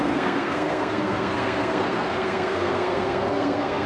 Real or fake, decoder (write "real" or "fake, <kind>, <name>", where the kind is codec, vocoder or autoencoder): fake, codec, SNAC